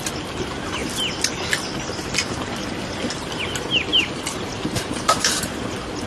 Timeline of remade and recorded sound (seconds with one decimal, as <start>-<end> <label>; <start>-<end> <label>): 0.0-3.9 recorded; 3.9-5.4 remade; 5.4-6.1 recorded